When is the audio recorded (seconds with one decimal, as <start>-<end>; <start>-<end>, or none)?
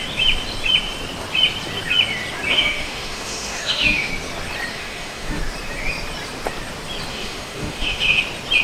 0.0-2.5; 4.1-4.7; 5.4-7.1; 8.2-8.6